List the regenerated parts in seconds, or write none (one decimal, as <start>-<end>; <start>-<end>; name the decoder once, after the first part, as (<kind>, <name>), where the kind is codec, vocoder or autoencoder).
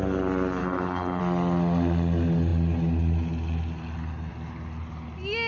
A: 0.6-1.2 (codec, HILCodec)